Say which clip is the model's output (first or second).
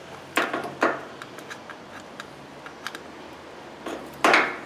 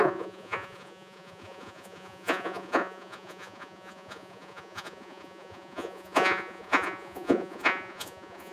second